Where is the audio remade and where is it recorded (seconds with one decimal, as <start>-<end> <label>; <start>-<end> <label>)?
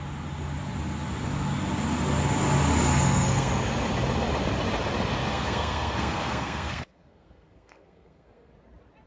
0.0-2.9 recorded; 2.9-3.5 remade; 3.5-5.3 recorded; 5.3-8.5 remade; 8.5-9.1 recorded